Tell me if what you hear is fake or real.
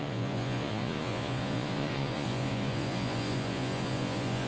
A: fake